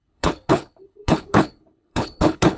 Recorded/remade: remade